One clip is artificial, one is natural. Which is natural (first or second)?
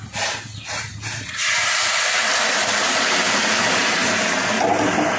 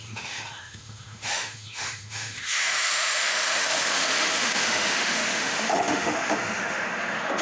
first